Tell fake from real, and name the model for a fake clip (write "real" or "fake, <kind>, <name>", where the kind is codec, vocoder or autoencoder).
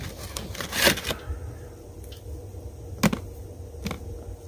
real